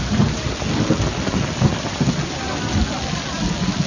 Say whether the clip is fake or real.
real